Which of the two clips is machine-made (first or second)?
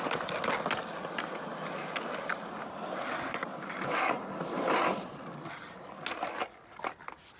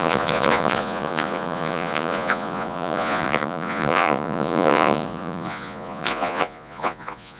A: second